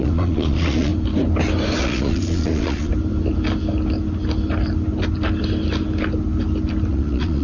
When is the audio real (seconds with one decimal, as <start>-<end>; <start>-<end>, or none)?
0.9-1.8; 2.9-6.9